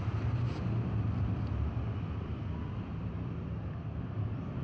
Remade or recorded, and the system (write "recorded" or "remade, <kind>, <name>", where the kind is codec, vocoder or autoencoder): remade, vocoder, BigVGAN v2